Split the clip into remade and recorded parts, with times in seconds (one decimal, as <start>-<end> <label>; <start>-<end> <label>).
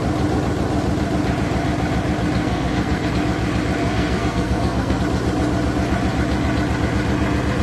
0.0-2.4 recorded; 2.4-3.1 remade; 3.1-3.8 recorded; 3.8-5.0 remade; 5.0-7.6 recorded